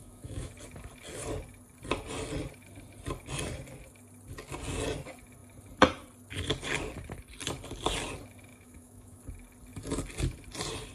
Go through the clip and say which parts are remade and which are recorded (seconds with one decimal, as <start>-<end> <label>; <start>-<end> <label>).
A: 0.0-0.5 remade; 0.5-8.5 recorded; 8.5-9.2 remade; 9.2-10.9 recorded